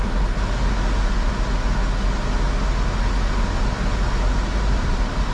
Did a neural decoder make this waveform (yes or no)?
no